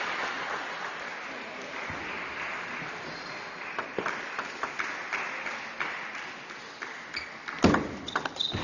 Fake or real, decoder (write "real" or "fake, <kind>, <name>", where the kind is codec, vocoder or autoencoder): real